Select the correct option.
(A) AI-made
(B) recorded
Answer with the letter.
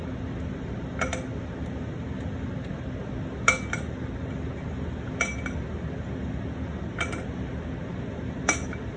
B